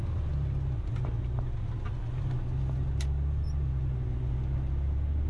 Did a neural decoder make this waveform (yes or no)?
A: no